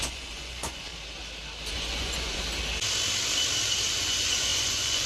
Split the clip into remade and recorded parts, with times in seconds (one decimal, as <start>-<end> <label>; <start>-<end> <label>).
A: 0.0-0.9 remade; 0.9-1.7 recorded; 1.7-2.4 remade; 2.4-3.9 recorded; 3.9-5.1 remade